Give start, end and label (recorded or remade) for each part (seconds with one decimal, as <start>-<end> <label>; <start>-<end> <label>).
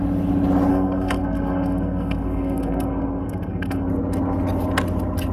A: 0.0-0.7 recorded; 0.7-3.9 remade; 3.9-5.3 recorded